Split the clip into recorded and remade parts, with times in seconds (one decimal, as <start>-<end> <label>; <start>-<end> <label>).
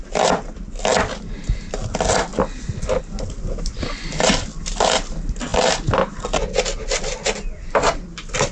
0.0-8.5 recorded